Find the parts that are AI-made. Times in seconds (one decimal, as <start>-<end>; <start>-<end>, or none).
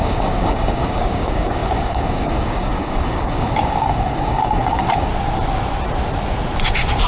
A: 0.0-5.1